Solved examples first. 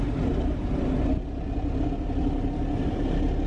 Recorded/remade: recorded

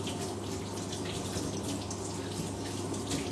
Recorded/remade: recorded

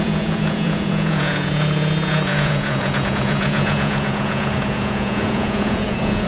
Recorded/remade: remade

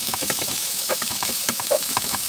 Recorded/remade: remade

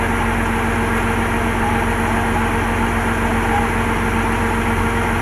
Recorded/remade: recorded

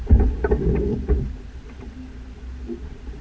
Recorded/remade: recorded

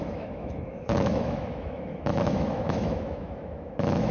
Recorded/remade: remade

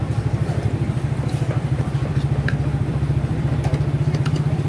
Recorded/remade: remade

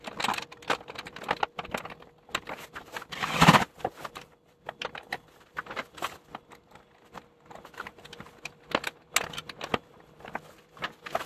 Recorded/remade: recorded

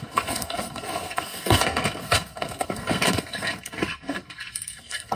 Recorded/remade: remade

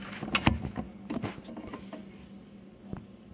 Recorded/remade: recorded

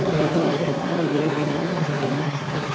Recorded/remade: remade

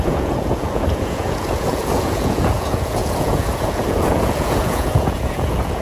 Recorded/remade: remade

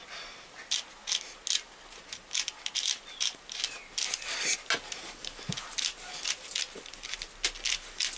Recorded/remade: recorded